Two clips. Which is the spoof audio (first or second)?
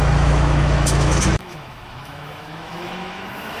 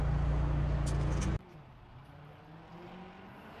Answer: first